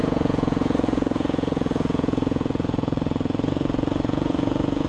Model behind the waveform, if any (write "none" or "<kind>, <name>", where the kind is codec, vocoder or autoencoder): vocoder, Vocos